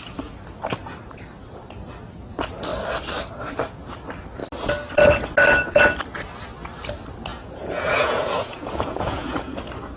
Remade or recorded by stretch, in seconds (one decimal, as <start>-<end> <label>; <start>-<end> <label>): 0.0-7.3 recorded; 7.3-9.6 remade; 9.6-10.0 recorded